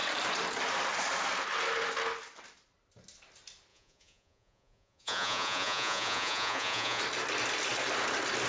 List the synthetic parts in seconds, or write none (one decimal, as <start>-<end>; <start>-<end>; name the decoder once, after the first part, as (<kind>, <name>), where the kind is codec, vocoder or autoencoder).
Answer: 3.7-7.0 (vocoder, Vocos)